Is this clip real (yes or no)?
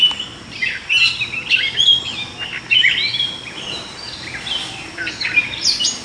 yes